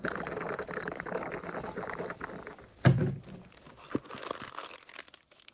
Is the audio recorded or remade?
recorded